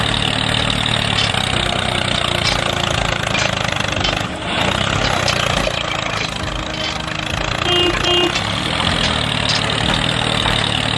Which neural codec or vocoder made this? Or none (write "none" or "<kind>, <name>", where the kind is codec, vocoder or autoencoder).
none